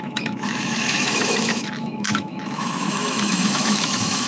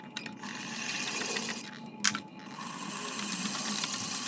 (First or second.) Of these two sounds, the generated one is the first